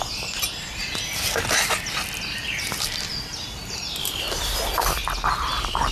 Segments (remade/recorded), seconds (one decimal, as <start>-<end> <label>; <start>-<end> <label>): 0.0-5.9 recorded